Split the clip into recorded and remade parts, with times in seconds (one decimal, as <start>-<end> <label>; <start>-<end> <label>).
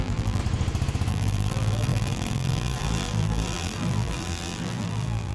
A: 0.0-0.4 remade; 0.4-1.1 recorded; 1.1-5.3 remade